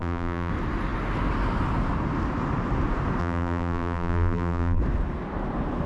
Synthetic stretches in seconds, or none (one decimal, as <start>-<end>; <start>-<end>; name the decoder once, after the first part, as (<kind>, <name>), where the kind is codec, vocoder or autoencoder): 0.0-0.5 (vocoder, BigVGAN v2); 3.2-4.8